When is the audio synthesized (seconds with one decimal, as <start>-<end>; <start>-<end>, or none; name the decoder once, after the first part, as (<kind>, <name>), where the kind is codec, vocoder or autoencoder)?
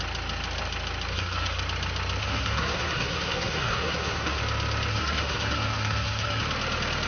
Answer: 1.1-1.6 (codec, SNAC); 2.2-4.4; 4.9-6.4